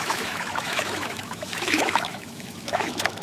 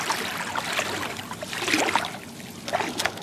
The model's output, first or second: first